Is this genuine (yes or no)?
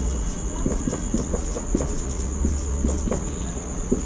no